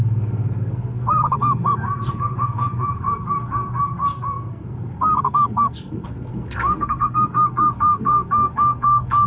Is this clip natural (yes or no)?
no